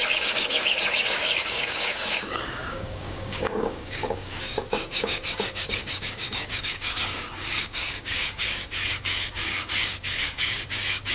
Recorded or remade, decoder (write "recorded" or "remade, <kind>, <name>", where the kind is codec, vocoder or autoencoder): remade, codec, DAC